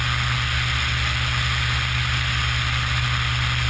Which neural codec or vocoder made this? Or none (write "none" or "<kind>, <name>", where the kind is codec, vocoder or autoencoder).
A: none